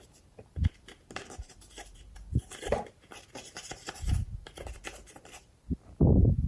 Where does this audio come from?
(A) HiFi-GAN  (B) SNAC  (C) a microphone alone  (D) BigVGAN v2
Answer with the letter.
D